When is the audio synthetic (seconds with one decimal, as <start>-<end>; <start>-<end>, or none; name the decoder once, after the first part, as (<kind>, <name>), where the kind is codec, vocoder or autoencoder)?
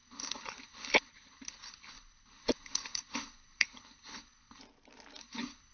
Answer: 0.0-4.6 (codec, HILCodec); 5.2-5.7